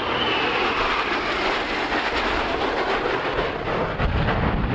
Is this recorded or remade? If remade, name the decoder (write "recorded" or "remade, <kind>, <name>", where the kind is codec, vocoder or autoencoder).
recorded